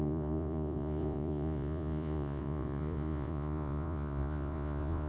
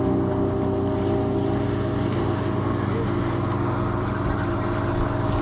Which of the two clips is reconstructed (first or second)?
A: first